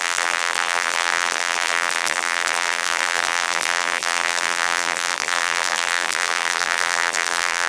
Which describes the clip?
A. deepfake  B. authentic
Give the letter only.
A